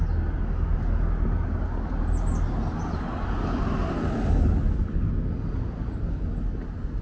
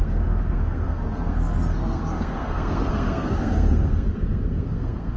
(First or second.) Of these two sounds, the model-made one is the second